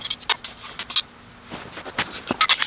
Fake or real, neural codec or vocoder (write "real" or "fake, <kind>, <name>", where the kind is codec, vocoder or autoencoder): real